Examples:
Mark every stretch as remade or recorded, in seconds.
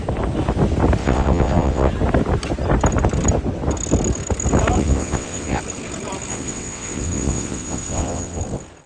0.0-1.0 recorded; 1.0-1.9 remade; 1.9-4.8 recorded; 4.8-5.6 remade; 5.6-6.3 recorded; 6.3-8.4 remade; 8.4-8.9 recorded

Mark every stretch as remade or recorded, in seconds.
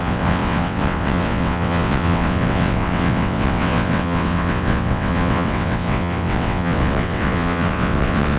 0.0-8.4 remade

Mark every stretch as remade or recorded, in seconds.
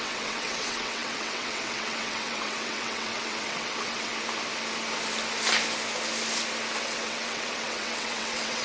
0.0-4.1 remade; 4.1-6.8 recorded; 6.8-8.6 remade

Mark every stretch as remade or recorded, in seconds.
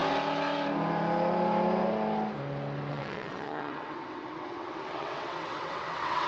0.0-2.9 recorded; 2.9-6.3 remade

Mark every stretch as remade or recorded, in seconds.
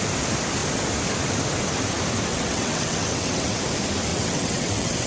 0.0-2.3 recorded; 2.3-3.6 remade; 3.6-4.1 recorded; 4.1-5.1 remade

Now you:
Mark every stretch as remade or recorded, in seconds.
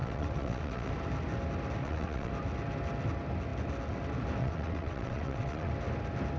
0.0-0.9 remade; 0.9-1.8 recorded; 1.8-2.3 remade; 2.3-4.4 recorded; 4.4-5.7 remade; 5.7-6.4 recorded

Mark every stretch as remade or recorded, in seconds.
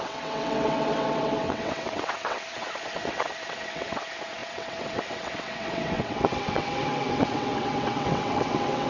0.0-8.9 remade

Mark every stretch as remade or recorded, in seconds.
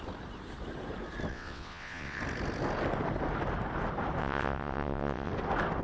0.0-1.3 recorded; 1.3-2.2 remade; 2.2-4.2 recorded; 4.2-5.3 remade; 5.3-5.8 recorded